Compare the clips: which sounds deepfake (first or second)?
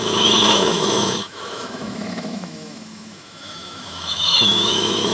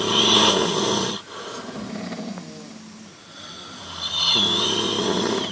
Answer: first